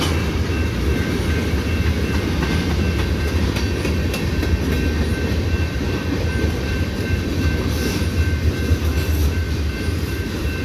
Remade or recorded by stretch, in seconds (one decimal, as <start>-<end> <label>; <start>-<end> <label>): 0.0-5.1 recorded; 5.1-8.5 remade; 8.5-9.2 recorded; 9.2-10.6 remade